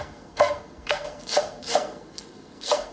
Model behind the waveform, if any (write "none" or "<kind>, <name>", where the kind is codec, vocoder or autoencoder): codec, SNAC